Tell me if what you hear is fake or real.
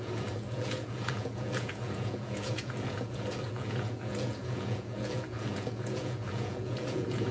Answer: fake